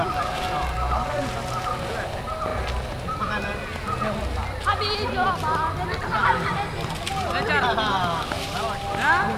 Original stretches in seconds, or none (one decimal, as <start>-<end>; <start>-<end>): 0.0-9.4